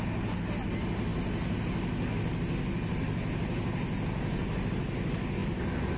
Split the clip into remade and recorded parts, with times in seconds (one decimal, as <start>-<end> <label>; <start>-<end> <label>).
0.0-6.0 recorded